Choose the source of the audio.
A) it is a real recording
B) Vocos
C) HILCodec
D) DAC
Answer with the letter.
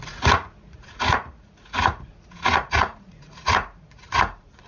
B